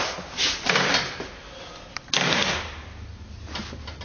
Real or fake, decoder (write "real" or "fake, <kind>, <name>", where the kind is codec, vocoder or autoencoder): real